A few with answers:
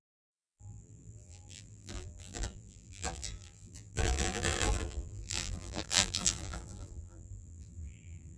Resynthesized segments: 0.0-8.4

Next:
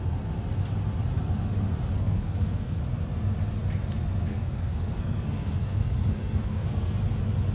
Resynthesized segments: 2.0-2.8; 4.3-7.0

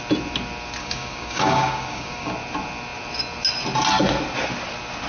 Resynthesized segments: 0.8-2.3

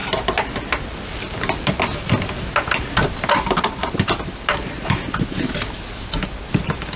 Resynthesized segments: none

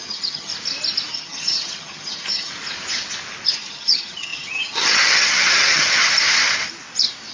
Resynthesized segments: 0.0-0.5; 1.1-2.5; 3.6-6.0

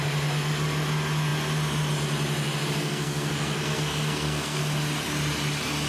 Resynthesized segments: 2.8-4.6

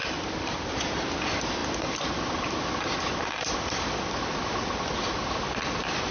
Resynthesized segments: 0.0-0.7; 1.6-5.3

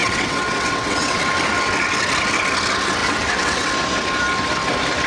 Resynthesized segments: 0.0-1.2; 3.0-3.7